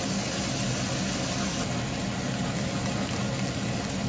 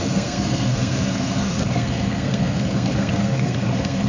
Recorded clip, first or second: first